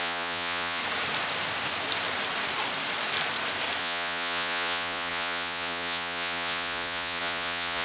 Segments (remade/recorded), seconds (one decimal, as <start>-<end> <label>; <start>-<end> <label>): 0.0-0.8 remade; 0.8-3.8 recorded; 3.8-7.8 remade